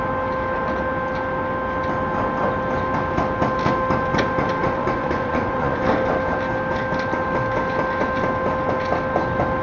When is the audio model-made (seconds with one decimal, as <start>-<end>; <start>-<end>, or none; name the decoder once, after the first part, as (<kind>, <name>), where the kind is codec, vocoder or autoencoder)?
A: 4.6-5.8 (vocoder, Vocos)